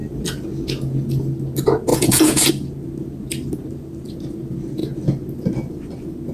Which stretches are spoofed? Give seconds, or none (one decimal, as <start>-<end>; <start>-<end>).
1.9-2.5